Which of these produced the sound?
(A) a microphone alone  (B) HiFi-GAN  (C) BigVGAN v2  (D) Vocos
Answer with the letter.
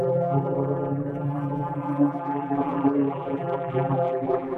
C